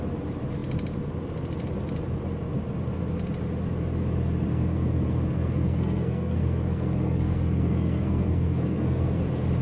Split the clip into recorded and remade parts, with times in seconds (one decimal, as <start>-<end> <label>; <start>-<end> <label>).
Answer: 0.0-4.5 recorded; 4.5-9.2 remade; 9.2-9.6 recorded